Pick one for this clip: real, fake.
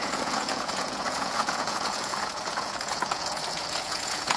fake